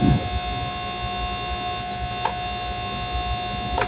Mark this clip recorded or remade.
recorded